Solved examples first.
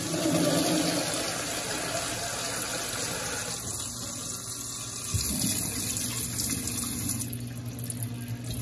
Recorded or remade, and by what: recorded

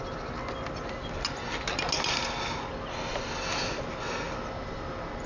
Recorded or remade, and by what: recorded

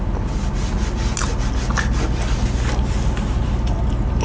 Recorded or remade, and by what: recorded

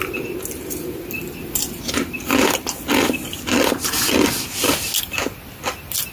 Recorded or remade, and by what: recorded